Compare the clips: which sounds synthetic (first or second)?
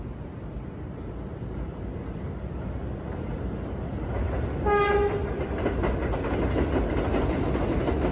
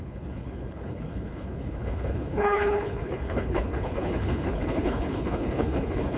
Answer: second